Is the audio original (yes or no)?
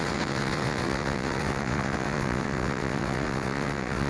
no